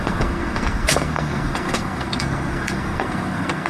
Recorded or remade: remade